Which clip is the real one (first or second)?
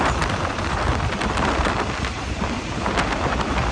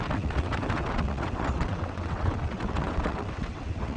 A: first